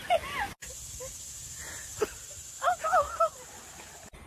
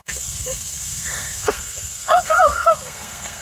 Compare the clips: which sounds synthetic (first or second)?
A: second